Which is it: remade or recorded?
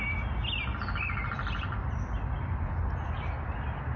recorded